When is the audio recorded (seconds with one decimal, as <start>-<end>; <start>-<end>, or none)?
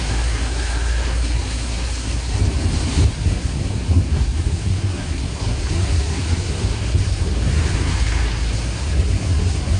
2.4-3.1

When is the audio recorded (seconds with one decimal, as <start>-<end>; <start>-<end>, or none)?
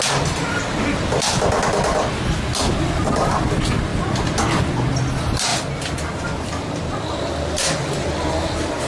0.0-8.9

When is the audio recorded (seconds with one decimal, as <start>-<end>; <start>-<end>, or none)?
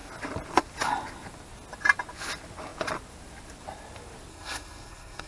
0.0-4.3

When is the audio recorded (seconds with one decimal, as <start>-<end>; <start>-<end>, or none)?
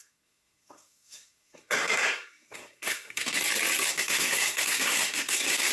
3.4-3.9